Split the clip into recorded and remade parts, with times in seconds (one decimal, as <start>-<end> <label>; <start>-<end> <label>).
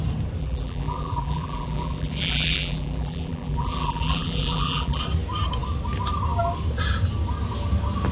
0.0-0.4 recorded; 0.4-5.0 remade; 5.0-8.1 recorded